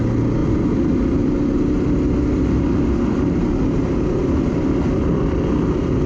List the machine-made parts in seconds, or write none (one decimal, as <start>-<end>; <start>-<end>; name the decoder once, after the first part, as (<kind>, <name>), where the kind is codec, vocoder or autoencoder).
none